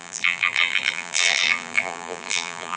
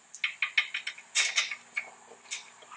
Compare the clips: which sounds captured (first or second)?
second